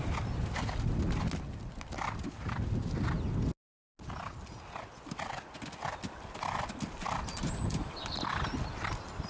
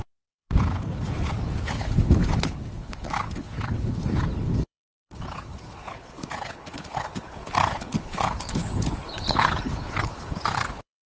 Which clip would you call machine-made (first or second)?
second